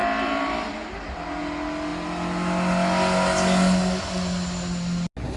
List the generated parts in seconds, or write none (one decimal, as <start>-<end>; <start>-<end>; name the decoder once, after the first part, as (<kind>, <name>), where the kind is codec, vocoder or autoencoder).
none